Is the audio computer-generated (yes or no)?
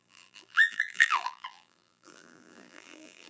yes